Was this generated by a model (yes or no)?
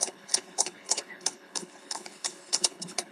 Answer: yes